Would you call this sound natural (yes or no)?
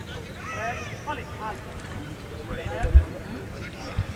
no